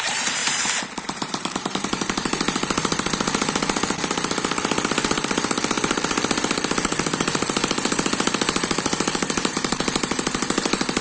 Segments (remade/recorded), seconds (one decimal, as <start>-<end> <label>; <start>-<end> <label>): 0.0-0.4 remade; 0.4-1.0 recorded; 1.0-11.0 remade